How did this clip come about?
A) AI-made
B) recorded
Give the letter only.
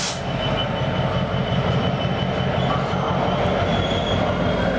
B